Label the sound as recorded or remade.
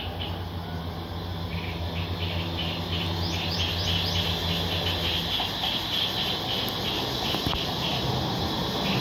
recorded